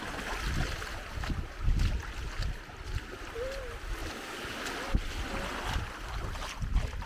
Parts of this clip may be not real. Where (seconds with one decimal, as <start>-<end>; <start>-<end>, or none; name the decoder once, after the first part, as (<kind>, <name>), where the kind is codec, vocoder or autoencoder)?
none

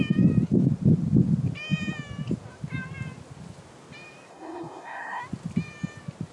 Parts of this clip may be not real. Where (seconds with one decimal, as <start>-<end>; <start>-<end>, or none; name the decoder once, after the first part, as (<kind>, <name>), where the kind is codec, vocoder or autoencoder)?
4.3-5.2 (codec, SNAC)

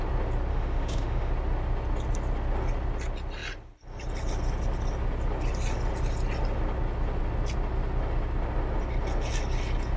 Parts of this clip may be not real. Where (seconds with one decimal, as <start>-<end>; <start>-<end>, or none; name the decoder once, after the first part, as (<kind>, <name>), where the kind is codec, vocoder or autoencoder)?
0.5-1.3 (autoencoder, DAC-VAE)